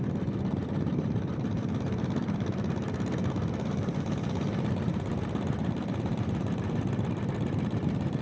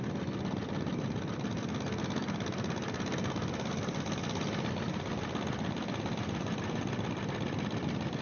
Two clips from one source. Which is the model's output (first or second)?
first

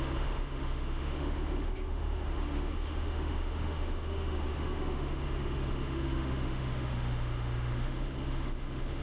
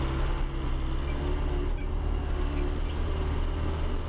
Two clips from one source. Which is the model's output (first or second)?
first